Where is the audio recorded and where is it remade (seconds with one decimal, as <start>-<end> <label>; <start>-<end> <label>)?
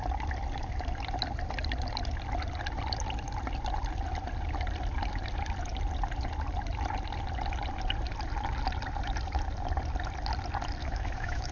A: 0.0-10.8 recorded; 10.8-11.5 remade